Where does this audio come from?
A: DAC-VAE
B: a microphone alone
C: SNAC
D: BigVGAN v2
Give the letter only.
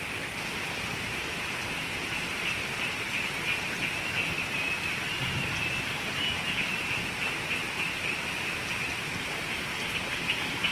B